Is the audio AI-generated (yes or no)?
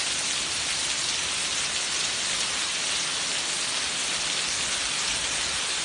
no